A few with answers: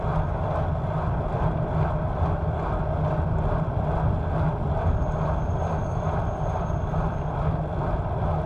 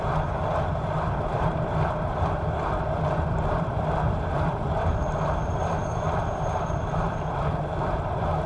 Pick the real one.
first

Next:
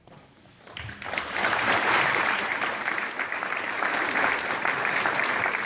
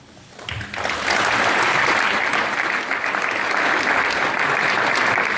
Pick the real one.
second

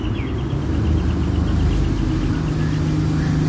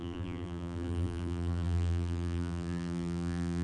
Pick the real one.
first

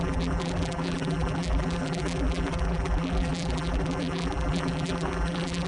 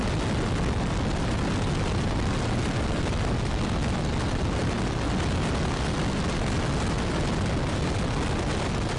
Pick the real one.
second